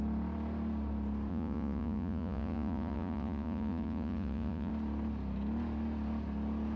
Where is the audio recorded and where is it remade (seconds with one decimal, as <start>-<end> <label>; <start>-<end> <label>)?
0.0-1.3 recorded; 1.3-4.7 remade; 4.7-6.8 recorded

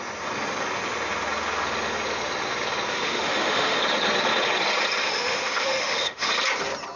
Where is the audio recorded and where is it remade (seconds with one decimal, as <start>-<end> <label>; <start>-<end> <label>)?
0.0-2.9 recorded; 2.9-3.8 remade; 3.8-5.0 recorded; 5.0-6.3 remade; 6.3-7.0 recorded

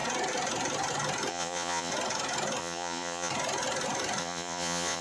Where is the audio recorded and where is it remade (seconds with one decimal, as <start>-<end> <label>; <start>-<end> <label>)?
0.0-1.3 recorded; 1.3-1.9 remade; 1.9-2.6 recorded; 2.6-3.3 remade; 3.3-4.2 recorded; 4.2-5.0 remade

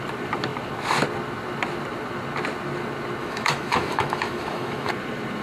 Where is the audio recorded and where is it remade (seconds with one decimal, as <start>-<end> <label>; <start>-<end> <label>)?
0.0-3.2 recorded; 3.2-4.9 remade; 4.9-5.4 recorded